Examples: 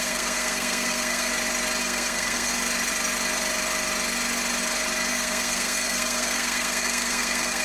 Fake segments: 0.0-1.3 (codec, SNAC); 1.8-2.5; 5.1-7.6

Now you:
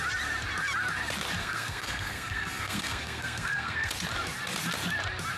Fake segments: 1.4-3.9 (codec, SNAC)

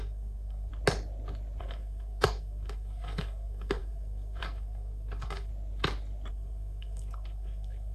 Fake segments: 0.0-0.7 (codec, SNAC); 1.6-5.5; 6.3-7.9

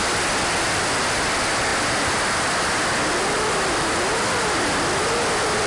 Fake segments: none

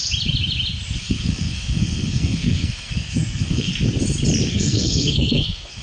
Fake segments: 1.0-3.7 (codec, SNAC); 4.5-5.8